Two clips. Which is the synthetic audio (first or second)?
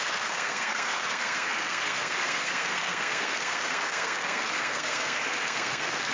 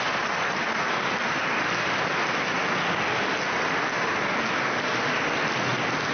first